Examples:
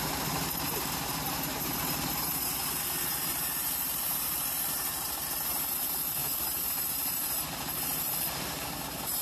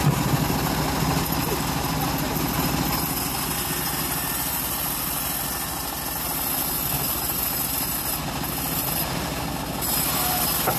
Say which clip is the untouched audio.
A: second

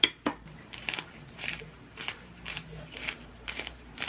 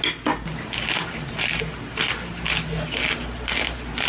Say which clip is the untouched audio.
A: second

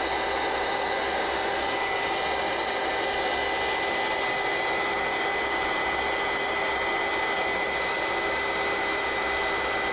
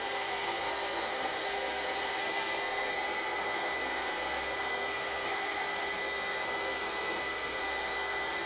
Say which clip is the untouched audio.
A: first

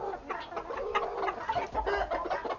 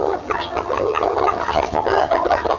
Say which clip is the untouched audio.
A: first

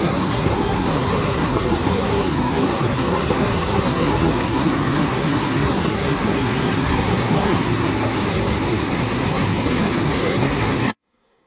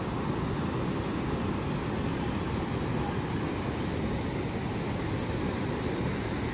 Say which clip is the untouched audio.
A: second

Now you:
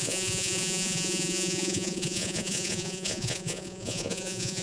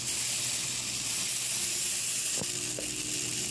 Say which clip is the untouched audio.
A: second